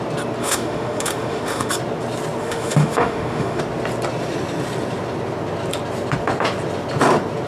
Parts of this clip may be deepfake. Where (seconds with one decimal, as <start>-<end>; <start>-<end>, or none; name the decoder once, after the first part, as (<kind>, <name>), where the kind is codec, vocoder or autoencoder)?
0.4-1.7 (autoencoder, DAC-VAE); 2.4-3.6